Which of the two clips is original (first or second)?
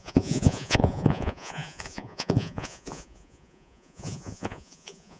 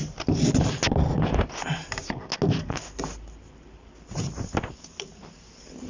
second